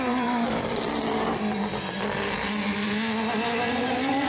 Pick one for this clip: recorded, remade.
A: recorded